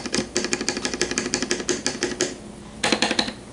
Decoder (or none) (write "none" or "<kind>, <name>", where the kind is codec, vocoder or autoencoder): none